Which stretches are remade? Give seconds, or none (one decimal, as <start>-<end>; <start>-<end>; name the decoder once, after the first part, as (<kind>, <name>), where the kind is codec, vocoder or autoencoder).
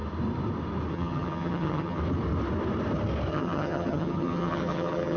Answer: 0.9-2.0 (vocoder, HiFi-GAN); 3.3-5.2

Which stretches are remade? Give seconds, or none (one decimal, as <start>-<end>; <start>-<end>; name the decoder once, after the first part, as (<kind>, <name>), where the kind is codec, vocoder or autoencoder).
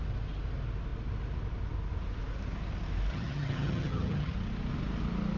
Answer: 3.1-4.3 (vocoder, HiFi-GAN)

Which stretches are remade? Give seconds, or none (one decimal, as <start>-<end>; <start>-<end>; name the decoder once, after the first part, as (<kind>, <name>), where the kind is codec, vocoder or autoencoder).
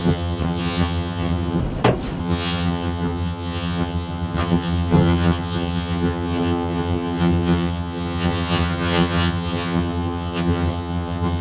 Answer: 0.0-1.6 (vocoder, HiFi-GAN); 2.2-11.4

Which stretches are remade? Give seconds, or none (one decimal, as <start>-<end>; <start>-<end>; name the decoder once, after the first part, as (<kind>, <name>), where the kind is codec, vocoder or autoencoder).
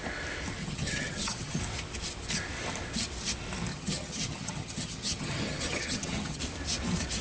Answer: 0.6-1.6 (vocoder, HiFi-GAN); 3.7-6.4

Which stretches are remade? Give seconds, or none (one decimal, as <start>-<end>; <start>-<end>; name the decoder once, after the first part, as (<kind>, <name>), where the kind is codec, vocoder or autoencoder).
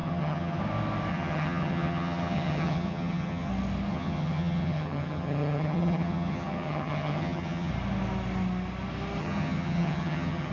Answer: 0.0-0.6 (vocoder, HiFi-GAN); 1.1-3.5; 3.9-7.7; 9.2-10.5